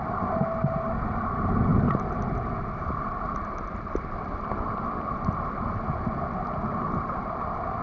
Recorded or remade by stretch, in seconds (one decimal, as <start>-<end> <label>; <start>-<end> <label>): 0.0-7.8 recorded